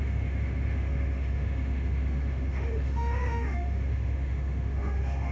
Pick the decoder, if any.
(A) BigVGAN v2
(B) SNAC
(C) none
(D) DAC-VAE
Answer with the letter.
D